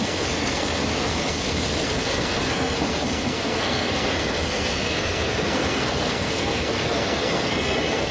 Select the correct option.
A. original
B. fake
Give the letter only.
B